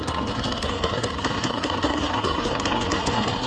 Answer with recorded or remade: remade